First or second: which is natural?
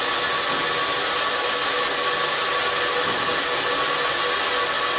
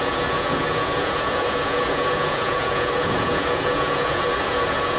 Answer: first